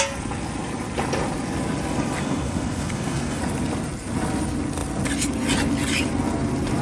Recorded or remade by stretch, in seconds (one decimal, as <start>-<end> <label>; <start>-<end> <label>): 0.0-2.2 recorded; 2.2-3.4 remade; 3.4-6.8 recorded